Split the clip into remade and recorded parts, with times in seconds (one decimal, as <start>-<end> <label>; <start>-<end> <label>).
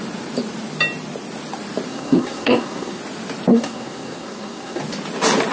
0.0-1.9 recorded; 1.9-3.0 remade; 3.0-3.5 recorded; 3.5-4.8 remade; 4.8-5.5 recorded